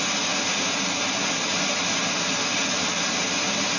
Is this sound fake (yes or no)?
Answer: no